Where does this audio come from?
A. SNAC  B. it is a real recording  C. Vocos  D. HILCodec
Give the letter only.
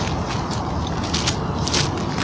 B